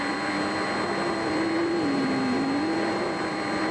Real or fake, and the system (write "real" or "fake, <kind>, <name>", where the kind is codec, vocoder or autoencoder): real